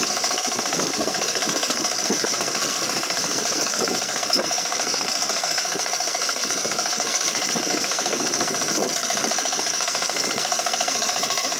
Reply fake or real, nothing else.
fake